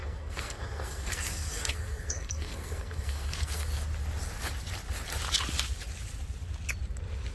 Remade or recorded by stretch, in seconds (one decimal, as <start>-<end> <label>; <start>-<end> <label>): 0.0-3.7 remade; 3.7-7.3 recorded